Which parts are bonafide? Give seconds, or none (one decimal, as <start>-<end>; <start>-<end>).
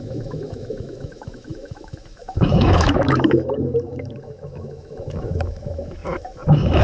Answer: none